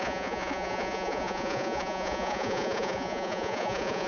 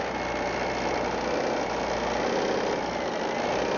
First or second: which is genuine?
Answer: second